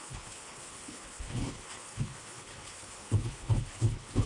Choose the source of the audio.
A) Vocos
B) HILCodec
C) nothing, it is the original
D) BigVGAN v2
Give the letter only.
B